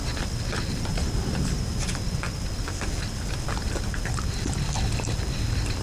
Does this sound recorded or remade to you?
recorded